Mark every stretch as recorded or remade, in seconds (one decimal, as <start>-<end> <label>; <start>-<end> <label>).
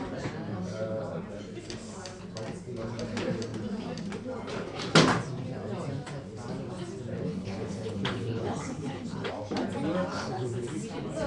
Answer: 0.0-7.3 recorded; 7.3-9.3 remade; 9.3-10.1 recorded; 10.1-10.7 remade; 10.7-11.3 recorded